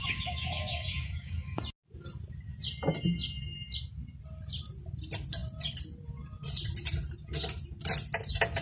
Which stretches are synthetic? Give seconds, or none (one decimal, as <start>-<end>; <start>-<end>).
0.0-1.6